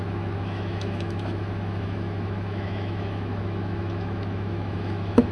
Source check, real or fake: fake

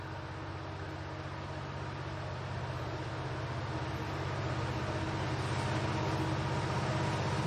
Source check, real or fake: real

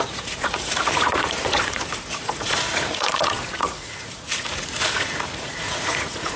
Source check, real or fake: fake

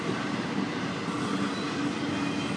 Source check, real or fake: real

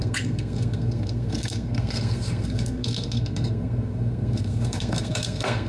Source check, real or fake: fake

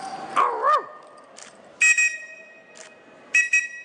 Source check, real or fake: real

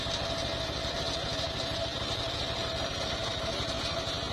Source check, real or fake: real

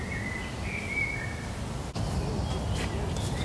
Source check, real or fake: real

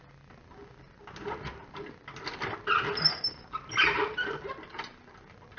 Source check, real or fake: real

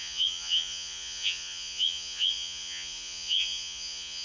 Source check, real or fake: fake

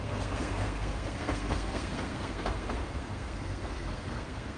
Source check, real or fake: fake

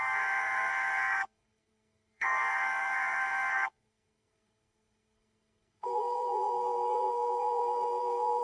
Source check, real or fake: fake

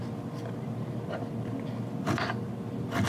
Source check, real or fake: real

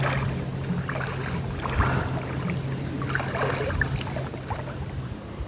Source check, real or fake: real